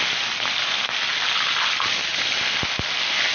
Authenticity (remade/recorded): recorded